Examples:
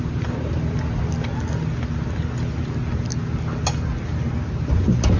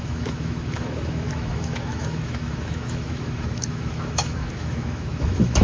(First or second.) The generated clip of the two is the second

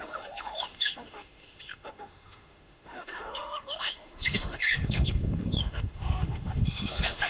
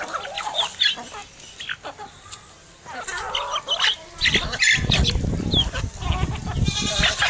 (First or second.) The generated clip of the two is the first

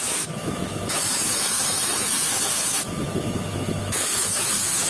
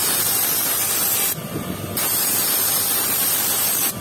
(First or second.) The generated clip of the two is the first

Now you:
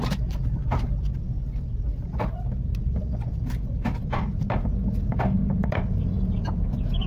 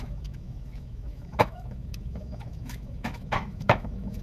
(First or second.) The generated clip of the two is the second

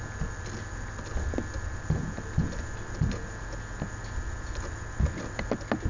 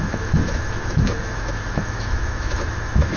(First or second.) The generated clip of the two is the second